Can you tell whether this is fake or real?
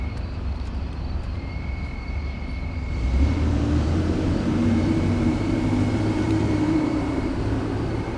fake